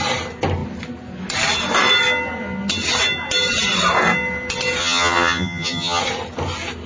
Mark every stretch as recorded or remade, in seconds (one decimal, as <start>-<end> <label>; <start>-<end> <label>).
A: 0.0-4.8 recorded; 4.8-6.0 remade; 6.0-6.9 recorded